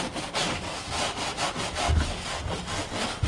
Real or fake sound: real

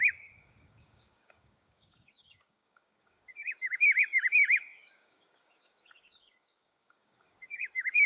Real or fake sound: fake